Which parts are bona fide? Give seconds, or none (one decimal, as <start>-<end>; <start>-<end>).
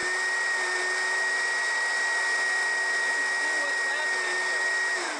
0.0-5.2